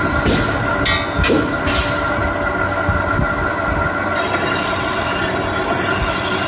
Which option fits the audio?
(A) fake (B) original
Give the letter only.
B